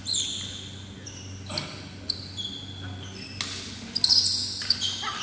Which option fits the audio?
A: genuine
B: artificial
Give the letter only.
A